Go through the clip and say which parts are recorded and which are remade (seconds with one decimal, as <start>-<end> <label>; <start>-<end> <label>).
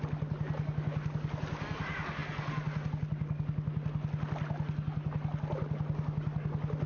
0.0-6.9 recorded